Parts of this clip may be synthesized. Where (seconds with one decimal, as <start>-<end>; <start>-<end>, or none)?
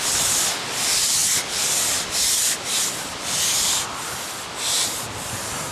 1.2-4.1